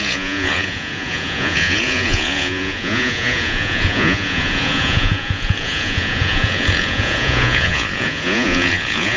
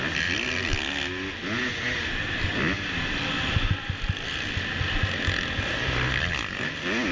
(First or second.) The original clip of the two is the second